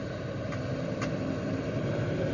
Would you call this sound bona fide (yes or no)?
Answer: yes